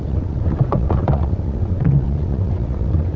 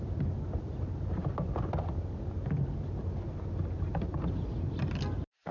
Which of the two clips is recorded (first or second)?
second